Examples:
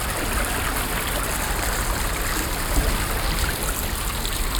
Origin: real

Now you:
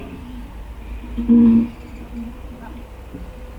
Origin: real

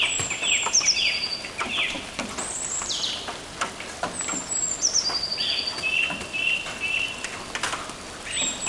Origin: real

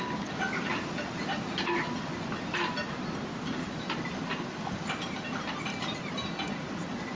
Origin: real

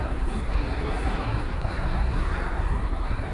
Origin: fake